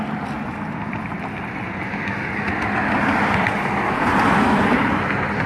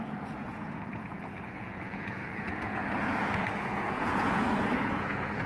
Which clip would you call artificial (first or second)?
second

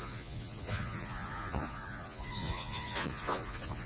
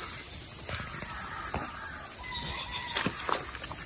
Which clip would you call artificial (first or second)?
first